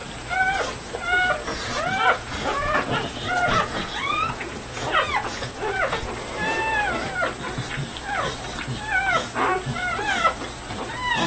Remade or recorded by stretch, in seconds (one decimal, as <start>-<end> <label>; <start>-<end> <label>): 0.0-1.5 recorded; 1.5-6.1 remade; 6.1-11.3 recorded